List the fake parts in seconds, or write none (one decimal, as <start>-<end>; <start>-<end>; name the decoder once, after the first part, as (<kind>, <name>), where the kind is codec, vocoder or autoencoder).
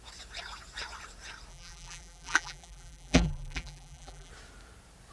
1.5-4.3 (vocoder, BigVGAN v2)